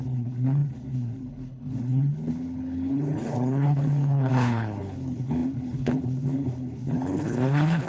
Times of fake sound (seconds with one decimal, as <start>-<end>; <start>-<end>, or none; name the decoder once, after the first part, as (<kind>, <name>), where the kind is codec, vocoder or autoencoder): 0.0-7.9 (codec, HILCodec)